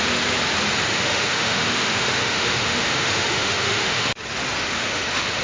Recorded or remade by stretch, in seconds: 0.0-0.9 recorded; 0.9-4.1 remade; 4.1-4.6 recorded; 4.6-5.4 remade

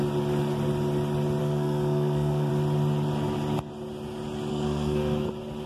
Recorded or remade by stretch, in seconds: 0.0-1.4 recorded; 1.4-2.5 remade; 2.5-4.5 recorded; 4.5-5.3 remade; 5.3-5.7 recorded

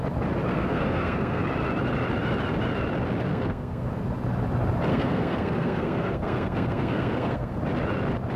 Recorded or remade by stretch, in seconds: 0.0-0.5 recorded; 0.5-1.4 remade; 1.4-3.3 recorded; 3.3-3.9 remade; 3.9-4.9 recorded; 4.9-7.6 remade; 7.6-8.4 recorded

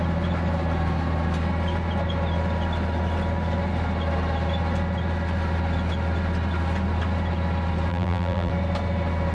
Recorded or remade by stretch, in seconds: 0.0-7.9 recorded; 7.9-8.5 remade; 8.5-9.3 recorded

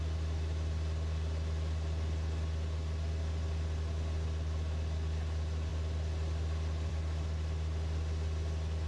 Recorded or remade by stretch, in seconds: 0.0-8.9 recorded

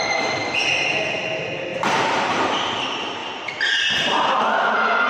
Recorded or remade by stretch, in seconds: 0.0-1.7 recorded; 1.7-2.5 remade; 2.5-5.1 recorded

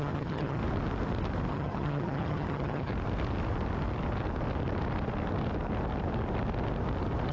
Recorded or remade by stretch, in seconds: 0.0-0.6 remade; 0.6-1.5 recorded; 1.5-2.9 remade; 2.9-7.3 recorded

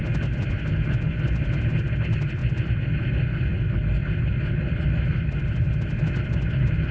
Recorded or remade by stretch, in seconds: 0.0-6.9 recorded